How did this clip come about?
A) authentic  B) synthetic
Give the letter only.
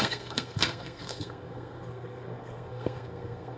B